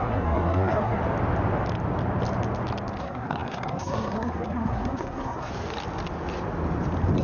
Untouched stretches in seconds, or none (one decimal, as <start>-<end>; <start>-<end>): 1.0-3.0; 5.5-7.2